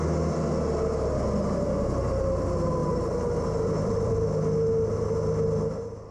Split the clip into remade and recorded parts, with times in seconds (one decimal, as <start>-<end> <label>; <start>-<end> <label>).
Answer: 0.0-2.8 recorded; 2.8-4.1 remade; 4.1-6.1 recorded